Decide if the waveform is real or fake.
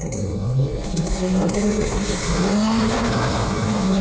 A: fake